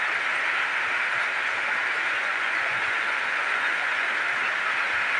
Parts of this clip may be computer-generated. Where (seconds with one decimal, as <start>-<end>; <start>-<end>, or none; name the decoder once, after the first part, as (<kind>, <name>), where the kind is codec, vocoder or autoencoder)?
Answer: 2.0-4.1 (vocoder, Vocos)